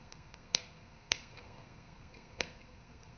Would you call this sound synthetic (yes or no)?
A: yes